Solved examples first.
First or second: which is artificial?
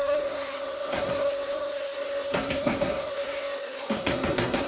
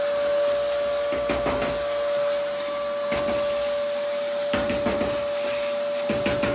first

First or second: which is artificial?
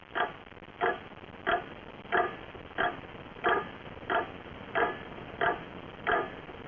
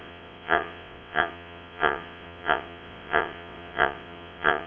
second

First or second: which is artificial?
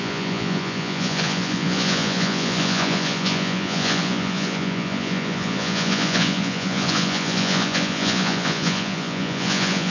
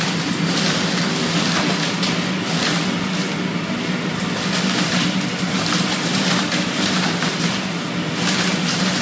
first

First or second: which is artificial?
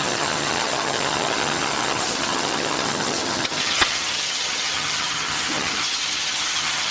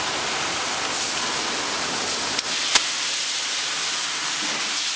first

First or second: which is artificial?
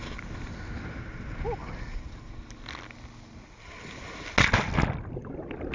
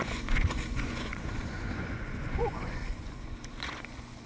second